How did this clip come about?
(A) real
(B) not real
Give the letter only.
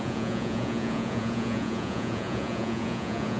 B